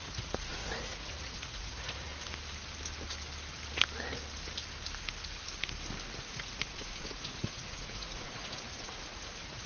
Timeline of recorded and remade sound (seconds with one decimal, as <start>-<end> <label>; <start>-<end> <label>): 0.0-2.1 remade; 2.1-6.2 recorded; 6.2-9.7 remade